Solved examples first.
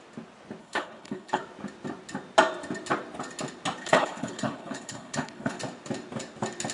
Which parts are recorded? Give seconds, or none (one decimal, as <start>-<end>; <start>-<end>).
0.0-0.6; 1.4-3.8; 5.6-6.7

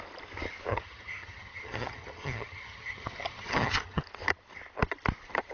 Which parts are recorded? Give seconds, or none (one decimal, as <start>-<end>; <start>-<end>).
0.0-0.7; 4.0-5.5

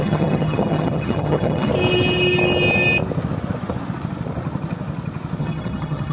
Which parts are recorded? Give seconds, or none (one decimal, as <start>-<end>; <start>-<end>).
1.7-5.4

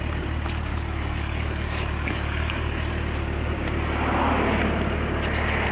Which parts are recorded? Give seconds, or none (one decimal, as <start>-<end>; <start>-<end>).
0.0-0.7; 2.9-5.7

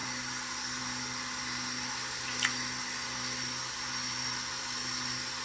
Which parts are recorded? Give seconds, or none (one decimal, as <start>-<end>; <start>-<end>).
0.0-5.4

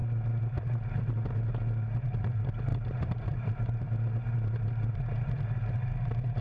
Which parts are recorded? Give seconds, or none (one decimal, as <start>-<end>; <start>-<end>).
0.0-2.7; 4.9-6.4